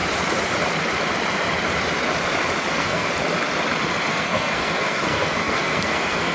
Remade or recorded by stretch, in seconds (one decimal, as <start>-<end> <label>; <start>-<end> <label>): 0.0-2.7 recorded; 2.7-3.1 remade; 3.1-4.1 recorded; 4.1-6.3 remade